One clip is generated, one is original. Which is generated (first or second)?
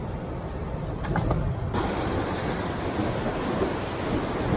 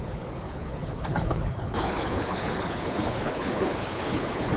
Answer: second